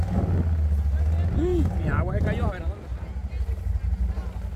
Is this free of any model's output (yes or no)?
yes